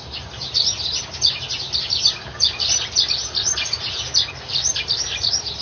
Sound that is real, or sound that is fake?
real